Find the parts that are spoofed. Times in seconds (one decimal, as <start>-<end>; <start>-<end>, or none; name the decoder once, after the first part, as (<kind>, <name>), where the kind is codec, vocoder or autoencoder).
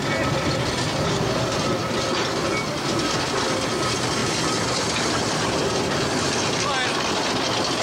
none